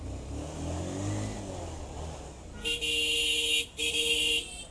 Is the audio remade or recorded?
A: recorded